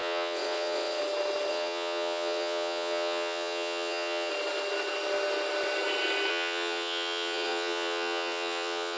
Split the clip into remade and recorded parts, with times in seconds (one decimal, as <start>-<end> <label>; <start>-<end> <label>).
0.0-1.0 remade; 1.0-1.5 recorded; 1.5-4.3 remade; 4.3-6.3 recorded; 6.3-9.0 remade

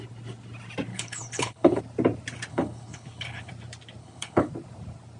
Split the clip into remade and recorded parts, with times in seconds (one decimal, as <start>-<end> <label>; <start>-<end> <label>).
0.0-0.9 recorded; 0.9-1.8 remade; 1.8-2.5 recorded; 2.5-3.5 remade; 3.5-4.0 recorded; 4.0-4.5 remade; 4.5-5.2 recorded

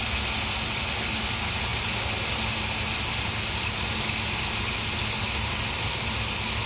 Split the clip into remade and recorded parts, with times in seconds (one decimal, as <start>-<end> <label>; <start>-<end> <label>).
0.0-6.7 recorded

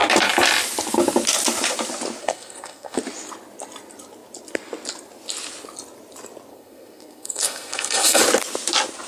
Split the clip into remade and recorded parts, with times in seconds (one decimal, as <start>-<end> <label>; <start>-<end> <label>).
0.0-2.2 recorded; 2.2-3.0 remade; 3.0-6.5 recorded; 6.5-8.2 remade; 8.2-9.1 recorded